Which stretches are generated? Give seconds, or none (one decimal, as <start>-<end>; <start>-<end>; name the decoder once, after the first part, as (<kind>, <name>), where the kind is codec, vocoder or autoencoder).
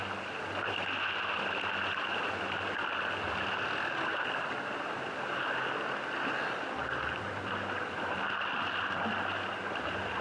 none